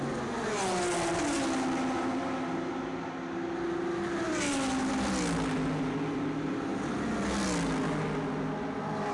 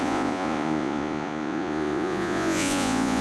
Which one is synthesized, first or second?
second